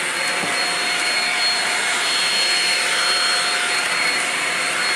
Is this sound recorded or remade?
recorded